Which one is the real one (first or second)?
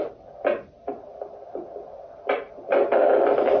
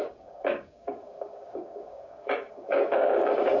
first